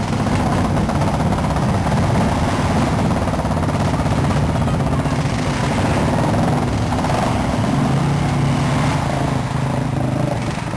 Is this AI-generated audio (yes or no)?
no